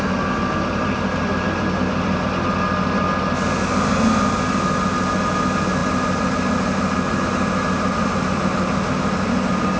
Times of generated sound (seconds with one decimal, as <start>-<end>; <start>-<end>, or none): none